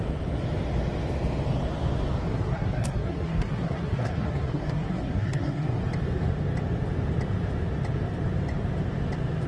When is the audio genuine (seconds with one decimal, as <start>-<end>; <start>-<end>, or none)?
0.0-2.3; 5.8-9.5